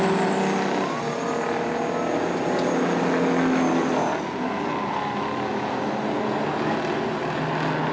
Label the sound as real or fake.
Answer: real